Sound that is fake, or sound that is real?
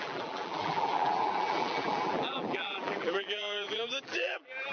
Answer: fake